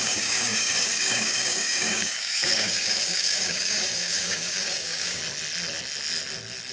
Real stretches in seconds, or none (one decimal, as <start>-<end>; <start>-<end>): 5.2-6.7